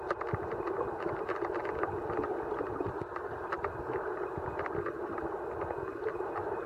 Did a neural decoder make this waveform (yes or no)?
no